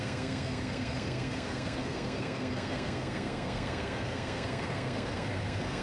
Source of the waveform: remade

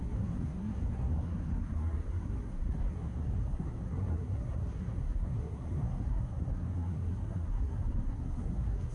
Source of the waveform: remade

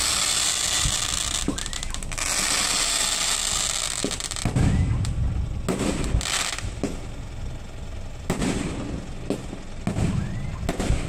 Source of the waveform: recorded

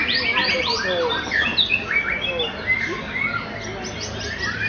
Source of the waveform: recorded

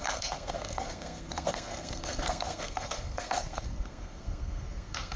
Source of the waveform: remade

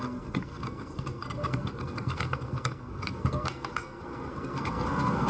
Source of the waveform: remade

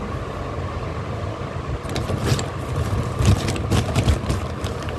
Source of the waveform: recorded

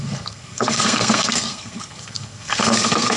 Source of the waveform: remade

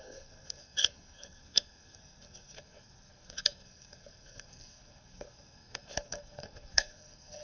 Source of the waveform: remade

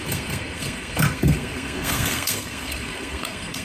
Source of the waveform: remade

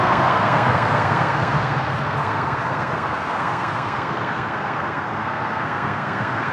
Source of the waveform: remade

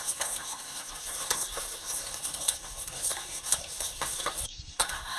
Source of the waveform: remade